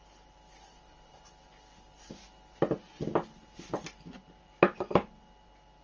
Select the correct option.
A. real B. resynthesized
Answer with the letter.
A